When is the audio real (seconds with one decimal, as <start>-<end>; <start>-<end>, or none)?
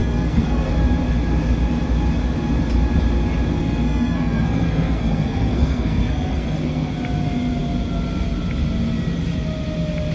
0.7-3.6; 6.9-10.1